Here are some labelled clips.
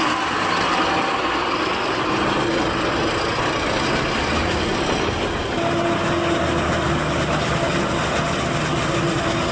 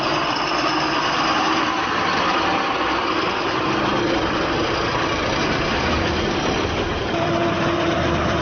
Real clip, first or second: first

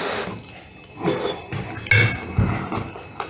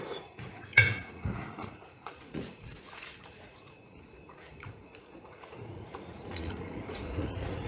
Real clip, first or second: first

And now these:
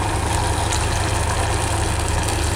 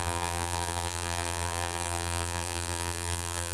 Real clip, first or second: first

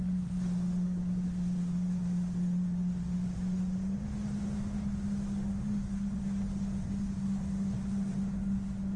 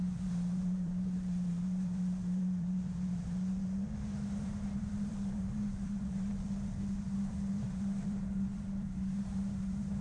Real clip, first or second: first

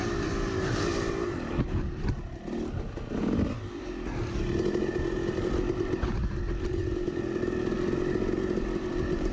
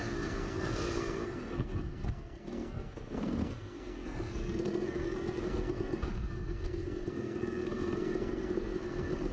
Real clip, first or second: first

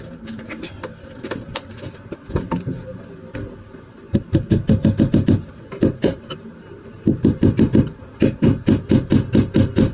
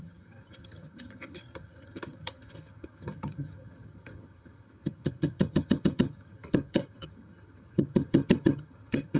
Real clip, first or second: first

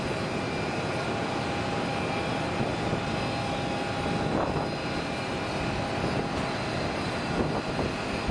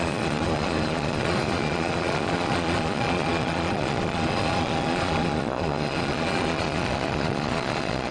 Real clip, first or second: first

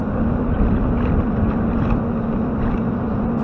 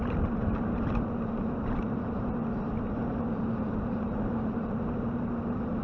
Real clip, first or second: first